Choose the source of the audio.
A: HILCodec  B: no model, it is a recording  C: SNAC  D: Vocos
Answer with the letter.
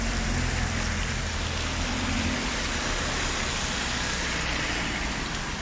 B